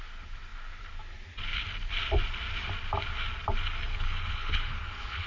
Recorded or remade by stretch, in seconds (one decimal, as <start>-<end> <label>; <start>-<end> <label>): 0.0-3.9 recorded; 3.9-5.3 remade